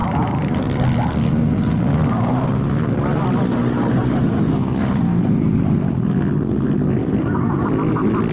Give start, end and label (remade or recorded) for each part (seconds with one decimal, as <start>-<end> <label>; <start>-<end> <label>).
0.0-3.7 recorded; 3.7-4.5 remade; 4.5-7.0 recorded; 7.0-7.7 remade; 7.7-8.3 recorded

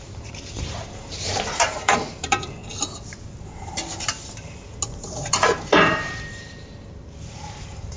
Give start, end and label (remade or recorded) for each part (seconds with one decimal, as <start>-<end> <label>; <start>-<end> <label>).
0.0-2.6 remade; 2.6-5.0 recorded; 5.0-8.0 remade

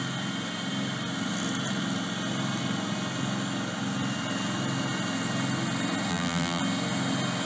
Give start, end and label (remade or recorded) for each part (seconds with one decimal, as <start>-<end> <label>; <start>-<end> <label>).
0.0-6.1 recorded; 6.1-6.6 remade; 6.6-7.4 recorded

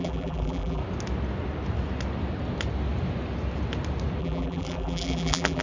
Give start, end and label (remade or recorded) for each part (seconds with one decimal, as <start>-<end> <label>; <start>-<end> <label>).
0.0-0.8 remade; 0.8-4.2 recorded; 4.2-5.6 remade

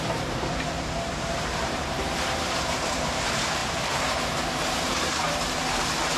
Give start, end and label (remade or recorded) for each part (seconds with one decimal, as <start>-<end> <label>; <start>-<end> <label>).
0.0-6.2 remade

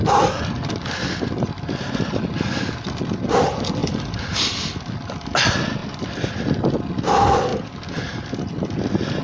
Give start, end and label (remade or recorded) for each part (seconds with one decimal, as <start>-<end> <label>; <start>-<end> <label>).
0.0-3.8 recorded; 3.8-4.8 remade; 4.8-9.2 recorded